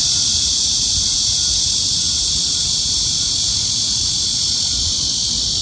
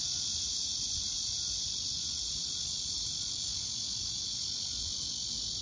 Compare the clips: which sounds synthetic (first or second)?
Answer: first